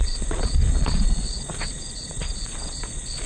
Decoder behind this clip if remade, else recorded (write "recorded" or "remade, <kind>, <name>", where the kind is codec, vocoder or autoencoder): remade, vocoder, Vocos